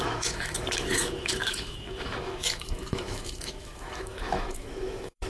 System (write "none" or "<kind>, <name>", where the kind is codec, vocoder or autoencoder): autoencoder, DAC-VAE